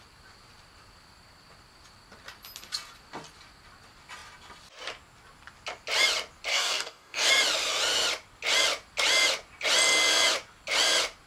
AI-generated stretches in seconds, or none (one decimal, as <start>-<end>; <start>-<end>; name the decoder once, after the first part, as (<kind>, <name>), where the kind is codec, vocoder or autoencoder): 6.5-7.3 (codec, DAC)

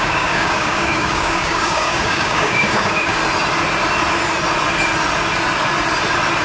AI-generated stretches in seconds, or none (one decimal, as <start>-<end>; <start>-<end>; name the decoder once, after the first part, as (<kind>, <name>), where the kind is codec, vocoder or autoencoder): 0.0-3.2 (codec, DAC)

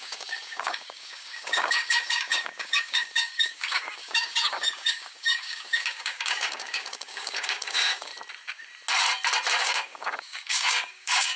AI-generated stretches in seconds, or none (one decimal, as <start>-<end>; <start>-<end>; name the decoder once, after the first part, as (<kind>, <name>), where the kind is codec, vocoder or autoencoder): 0.0-8.1 (codec, DAC); 9.6-11.4

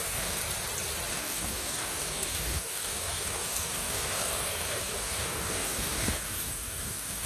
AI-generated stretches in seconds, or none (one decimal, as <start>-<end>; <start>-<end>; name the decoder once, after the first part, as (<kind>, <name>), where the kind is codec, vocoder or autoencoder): 0.0-0.4 (codec, DAC); 1.1-7.3

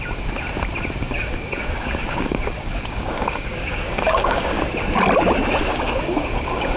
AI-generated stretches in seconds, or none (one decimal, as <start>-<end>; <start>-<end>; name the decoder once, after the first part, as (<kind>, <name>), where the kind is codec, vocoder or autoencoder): 1.0-4.7 (codec, DAC); 5.7-6.8

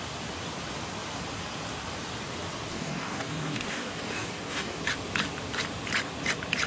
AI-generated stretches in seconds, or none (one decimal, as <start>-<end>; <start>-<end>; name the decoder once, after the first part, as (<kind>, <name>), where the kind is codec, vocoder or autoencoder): 2.7-4.8 (codec, DAC)